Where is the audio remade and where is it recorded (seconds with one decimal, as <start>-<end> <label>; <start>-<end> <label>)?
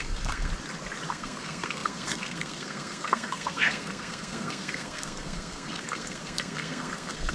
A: 0.0-0.5 remade; 0.5-1.1 recorded; 1.1-7.3 remade